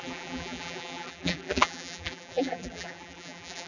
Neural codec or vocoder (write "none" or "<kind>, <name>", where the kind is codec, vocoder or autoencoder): vocoder, BigVGAN v2